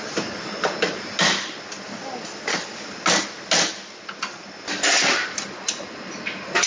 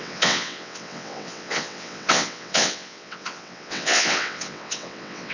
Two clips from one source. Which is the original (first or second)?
first